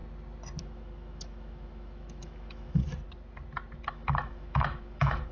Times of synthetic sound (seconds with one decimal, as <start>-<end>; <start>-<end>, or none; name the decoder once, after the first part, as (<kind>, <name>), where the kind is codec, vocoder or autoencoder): 0.6-2.8 (autoencoder, DAC-VAE); 3.9-5.3